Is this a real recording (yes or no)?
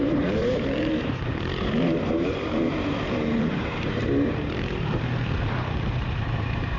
no